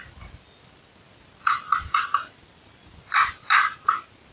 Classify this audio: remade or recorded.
recorded